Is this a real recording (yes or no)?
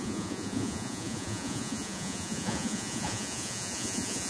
no